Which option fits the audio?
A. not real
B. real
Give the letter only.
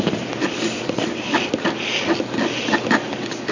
B